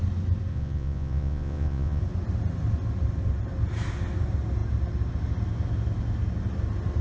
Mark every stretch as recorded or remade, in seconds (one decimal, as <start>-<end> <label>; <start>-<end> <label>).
0.0-0.5 recorded; 0.5-2.0 remade; 2.0-7.0 recorded